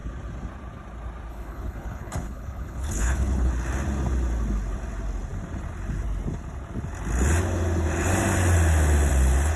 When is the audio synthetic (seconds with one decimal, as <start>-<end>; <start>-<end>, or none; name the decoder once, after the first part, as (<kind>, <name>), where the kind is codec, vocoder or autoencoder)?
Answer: 1.3-3.5 (codec, HILCodec)